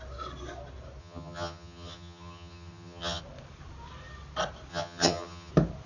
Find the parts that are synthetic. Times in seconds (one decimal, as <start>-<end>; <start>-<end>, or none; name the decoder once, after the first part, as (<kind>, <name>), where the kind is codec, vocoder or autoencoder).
1.0-3.2 (vocoder, HiFi-GAN); 4.7-5.5